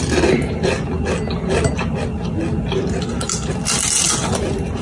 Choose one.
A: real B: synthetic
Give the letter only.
A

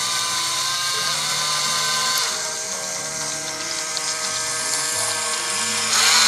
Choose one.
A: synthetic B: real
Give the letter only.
B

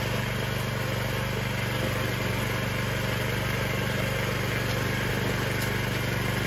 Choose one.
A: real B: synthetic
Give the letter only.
A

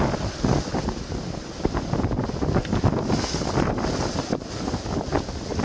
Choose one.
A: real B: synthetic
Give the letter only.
A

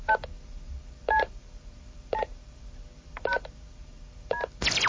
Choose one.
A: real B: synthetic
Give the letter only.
B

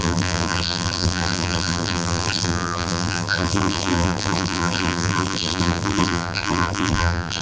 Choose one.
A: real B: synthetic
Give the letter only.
B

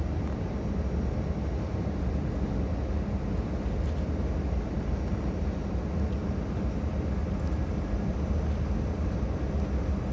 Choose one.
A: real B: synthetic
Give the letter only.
A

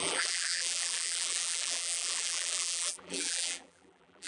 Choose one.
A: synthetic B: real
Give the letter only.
A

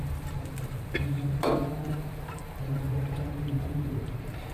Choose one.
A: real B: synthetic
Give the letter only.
B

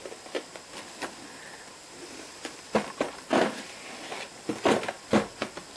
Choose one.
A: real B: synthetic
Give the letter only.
A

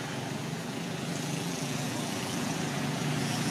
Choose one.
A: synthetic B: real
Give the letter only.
A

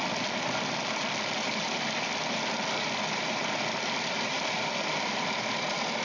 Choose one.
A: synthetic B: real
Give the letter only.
B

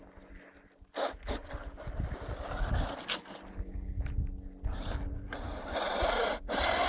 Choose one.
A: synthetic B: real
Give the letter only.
B